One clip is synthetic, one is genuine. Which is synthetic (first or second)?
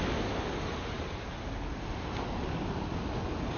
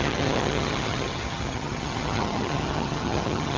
second